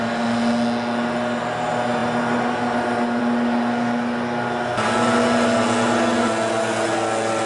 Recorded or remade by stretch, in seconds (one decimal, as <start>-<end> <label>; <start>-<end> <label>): 0.0-7.5 recorded